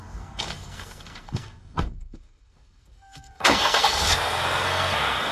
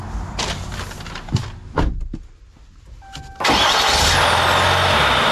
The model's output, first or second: first